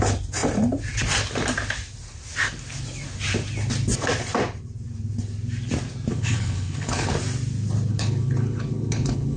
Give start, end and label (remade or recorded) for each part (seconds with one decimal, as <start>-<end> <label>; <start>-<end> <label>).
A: 0.0-6.1 recorded; 6.1-7.1 remade; 7.1-7.9 recorded; 7.9-9.4 remade